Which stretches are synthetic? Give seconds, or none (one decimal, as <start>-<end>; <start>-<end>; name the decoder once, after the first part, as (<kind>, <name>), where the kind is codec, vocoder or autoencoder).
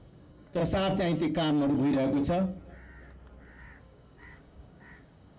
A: 0.0-0.6 (codec, DAC); 3.8-5.4